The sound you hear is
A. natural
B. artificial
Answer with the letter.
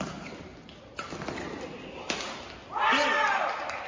A